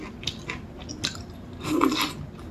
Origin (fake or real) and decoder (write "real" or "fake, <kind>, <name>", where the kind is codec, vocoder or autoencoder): real